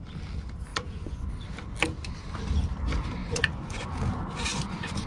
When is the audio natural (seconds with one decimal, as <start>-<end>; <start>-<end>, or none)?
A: 0.0-0.7; 1.3-3.2; 3.9-4.5